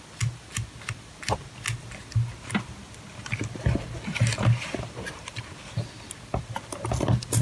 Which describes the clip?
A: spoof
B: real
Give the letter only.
B